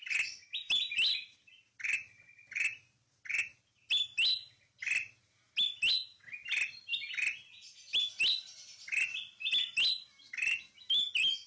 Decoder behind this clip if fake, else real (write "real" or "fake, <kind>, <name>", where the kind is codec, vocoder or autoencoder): real